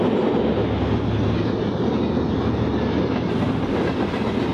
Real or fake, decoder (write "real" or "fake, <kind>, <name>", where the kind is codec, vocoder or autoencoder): real